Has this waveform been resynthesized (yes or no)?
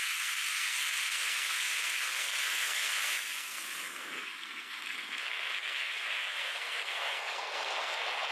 yes